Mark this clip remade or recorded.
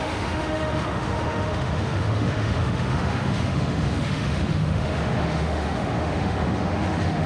remade